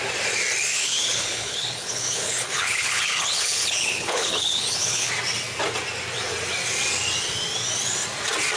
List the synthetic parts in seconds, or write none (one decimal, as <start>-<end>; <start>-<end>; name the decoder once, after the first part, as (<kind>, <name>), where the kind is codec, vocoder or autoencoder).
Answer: 0.7-5.1 (codec, HILCodec)